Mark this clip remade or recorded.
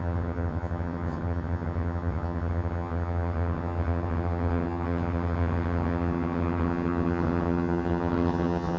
remade